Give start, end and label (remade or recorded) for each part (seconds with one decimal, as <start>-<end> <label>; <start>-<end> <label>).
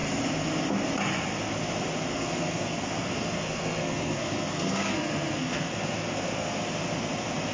0.0-2.1 recorded; 2.1-6.6 remade; 6.6-7.5 recorded